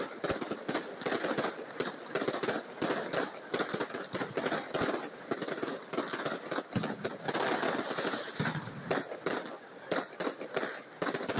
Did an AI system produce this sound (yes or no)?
no